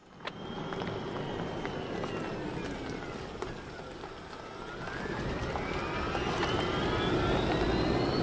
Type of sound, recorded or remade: recorded